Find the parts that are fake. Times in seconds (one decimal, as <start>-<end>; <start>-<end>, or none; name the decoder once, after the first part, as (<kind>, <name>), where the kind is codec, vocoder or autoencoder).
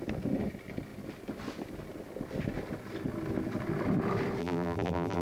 4.4-5.2 (vocoder, BigVGAN v2)